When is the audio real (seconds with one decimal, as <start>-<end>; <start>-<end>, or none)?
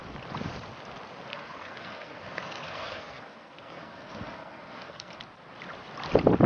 0.0-1.3; 5.2-6.5